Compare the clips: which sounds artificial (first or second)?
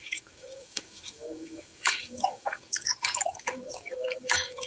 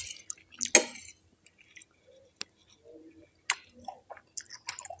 first